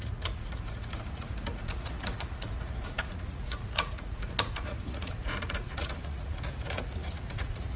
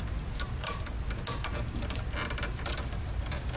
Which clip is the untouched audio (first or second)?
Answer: second